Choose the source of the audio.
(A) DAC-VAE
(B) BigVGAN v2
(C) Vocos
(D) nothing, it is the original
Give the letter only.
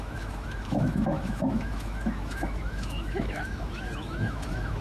A